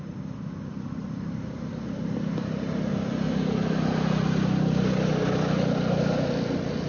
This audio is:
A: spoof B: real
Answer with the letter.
B